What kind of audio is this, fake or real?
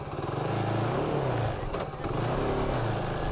real